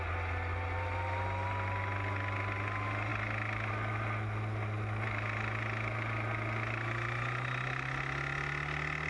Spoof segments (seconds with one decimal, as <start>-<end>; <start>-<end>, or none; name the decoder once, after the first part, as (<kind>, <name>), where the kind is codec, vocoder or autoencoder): none